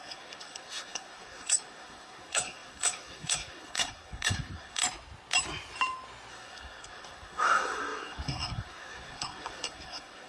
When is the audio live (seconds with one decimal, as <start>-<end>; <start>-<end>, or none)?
4.8-6.3